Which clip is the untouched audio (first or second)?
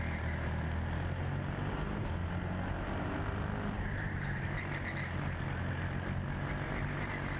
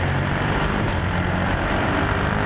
first